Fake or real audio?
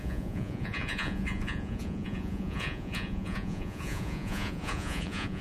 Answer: fake